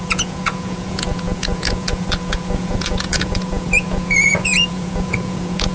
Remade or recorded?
remade